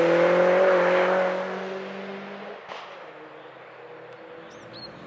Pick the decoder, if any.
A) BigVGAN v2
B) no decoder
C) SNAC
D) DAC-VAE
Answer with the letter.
B